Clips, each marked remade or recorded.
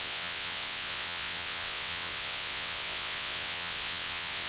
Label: remade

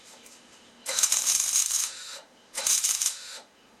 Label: remade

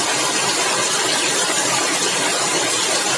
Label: recorded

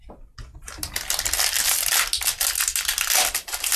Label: recorded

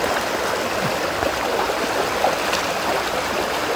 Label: recorded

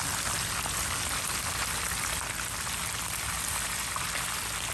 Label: recorded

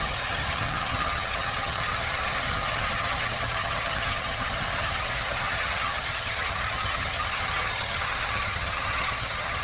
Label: remade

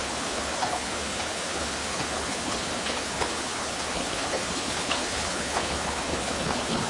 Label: remade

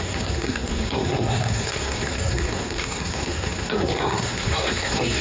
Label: remade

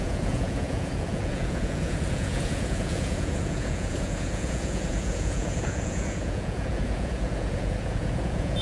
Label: remade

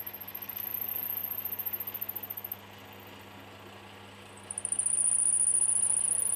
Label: recorded